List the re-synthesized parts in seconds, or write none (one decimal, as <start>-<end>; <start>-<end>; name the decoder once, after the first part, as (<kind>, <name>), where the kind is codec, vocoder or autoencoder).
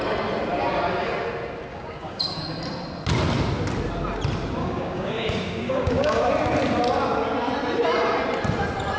1.7-2.4 (codec, DAC); 4.6-6.3